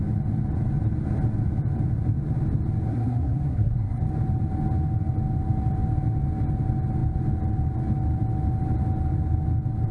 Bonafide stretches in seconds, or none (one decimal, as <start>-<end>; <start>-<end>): 0.0-2.9; 4.0-9.9